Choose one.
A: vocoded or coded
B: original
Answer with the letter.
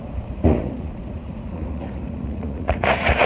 A